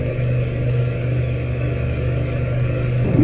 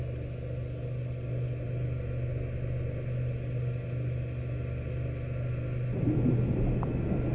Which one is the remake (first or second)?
first